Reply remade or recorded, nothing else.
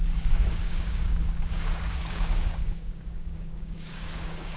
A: remade